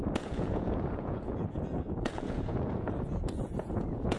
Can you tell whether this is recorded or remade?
remade